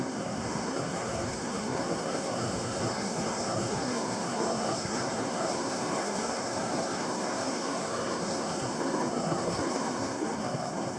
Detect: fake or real fake